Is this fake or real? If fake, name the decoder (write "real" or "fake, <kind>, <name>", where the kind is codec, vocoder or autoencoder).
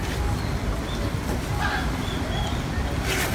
real